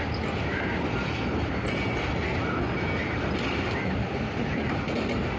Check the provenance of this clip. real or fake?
real